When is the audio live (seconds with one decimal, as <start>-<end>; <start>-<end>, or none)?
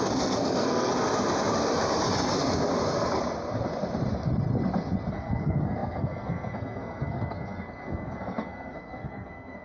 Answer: 0.9-5.1